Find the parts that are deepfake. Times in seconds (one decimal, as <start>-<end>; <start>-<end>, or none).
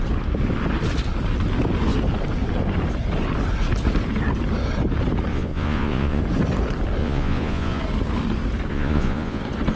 5.3-6.2; 7.0-7.8; 8.7-9.4